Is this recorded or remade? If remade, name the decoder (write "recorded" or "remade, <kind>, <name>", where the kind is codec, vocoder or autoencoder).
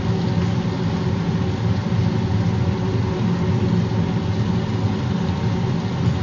recorded